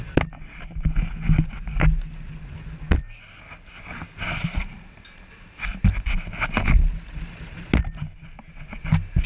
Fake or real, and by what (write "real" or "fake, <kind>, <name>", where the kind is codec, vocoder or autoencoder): real